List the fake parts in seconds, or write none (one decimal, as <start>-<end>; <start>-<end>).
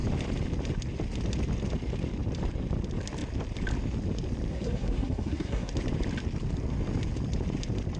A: 4.5-5.7